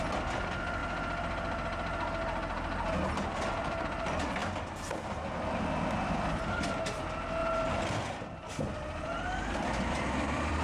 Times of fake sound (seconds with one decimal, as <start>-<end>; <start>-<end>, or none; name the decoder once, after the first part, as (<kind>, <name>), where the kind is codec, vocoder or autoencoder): 0.0-0.8 (vocoder, BigVGAN v2); 3.5-4.4; 6.0-10.6

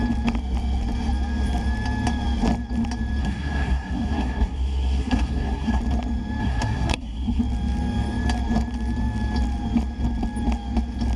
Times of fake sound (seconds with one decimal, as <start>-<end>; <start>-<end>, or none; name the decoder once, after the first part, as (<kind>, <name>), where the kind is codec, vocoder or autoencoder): 3.2-5.8 (codec, SNAC); 6.4-7.4

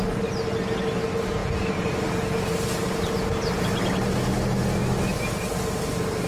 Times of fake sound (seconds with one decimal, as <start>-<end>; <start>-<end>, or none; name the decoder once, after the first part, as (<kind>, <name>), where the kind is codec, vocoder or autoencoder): none

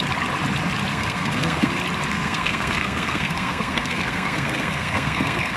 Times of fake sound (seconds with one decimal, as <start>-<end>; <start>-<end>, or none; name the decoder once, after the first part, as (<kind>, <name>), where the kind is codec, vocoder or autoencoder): 0.9-1.7 (codec, SNAC); 2.1-5.6

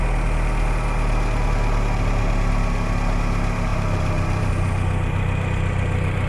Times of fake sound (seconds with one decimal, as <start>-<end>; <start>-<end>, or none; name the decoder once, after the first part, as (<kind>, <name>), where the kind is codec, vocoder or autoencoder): 3.7-4.5 (vocoder, BigVGAN v2)

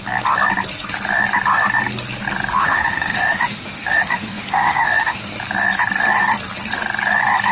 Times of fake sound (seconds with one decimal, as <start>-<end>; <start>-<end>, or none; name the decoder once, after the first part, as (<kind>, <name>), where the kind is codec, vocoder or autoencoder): 2.5-5.3 (autoencoder, DAC-VAE)

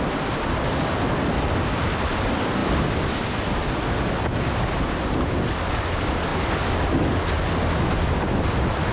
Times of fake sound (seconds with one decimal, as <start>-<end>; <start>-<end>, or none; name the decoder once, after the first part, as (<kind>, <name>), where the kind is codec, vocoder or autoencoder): none

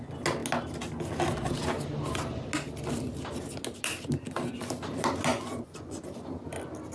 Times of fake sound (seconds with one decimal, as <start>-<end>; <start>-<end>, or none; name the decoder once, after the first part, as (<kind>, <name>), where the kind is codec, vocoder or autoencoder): 5.3-6.0 (vocoder, Vocos)